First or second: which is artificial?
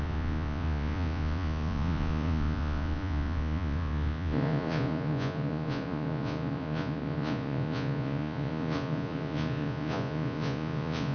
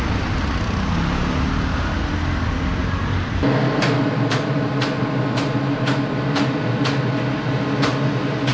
first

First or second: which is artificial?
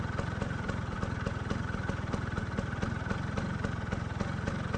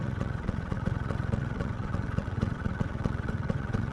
second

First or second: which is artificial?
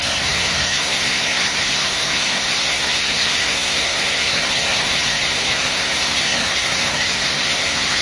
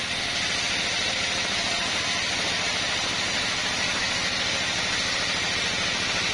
first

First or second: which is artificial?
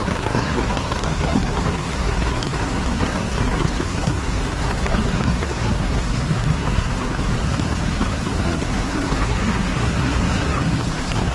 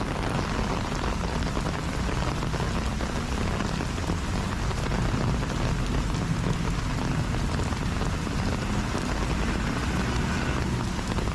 first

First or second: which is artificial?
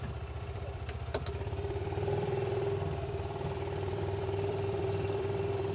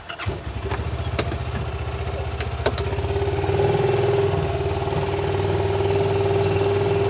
first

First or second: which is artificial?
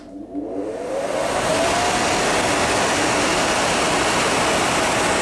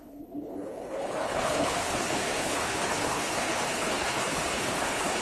second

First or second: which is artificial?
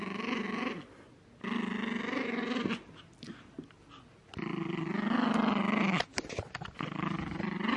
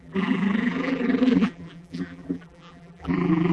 second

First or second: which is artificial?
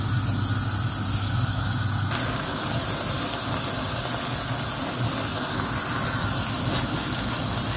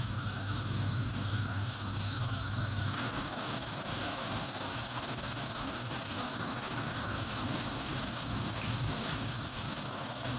second